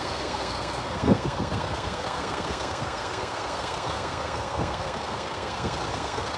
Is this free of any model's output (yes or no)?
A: no